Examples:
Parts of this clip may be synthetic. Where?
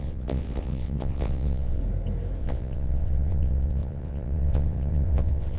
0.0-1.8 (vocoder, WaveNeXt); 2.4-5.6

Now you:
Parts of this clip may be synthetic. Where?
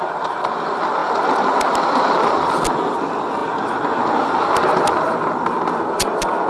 none